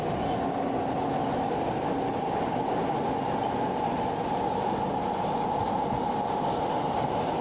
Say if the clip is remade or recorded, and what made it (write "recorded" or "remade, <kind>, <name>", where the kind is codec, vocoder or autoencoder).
recorded